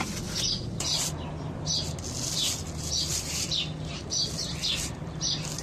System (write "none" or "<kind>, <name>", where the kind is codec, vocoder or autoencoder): none